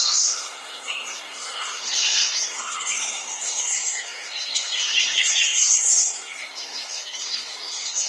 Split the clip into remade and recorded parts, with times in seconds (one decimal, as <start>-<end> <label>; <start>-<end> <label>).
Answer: 0.0-8.1 remade